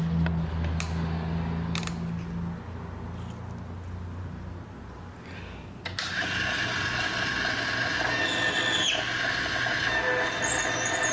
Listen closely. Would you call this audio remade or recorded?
recorded